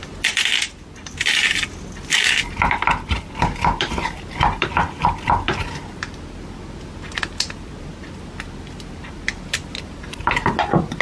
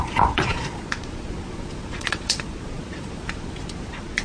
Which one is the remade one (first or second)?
second